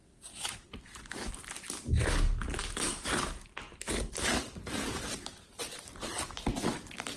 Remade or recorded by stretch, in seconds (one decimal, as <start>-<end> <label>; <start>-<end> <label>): 0.0-7.2 recorded

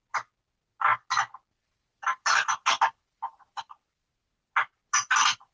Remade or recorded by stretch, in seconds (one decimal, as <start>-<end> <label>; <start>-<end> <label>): 0.0-5.5 recorded

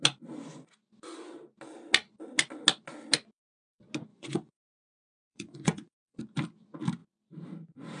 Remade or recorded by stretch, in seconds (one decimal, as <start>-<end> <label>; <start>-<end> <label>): 0.0-4.1 recorded; 4.1-6.2 remade; 6.2-8.0 recorded